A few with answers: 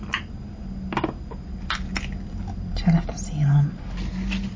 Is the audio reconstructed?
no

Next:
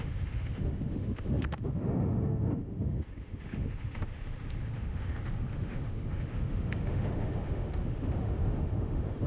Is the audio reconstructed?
yes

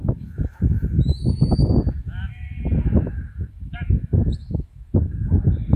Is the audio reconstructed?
yes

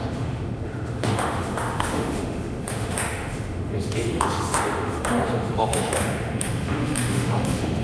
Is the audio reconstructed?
yes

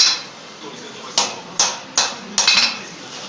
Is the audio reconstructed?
no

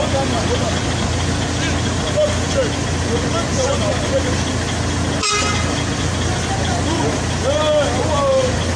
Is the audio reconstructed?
no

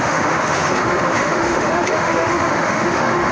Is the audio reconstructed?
yes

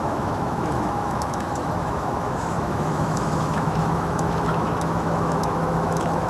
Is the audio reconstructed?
yes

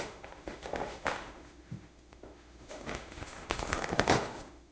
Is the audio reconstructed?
yes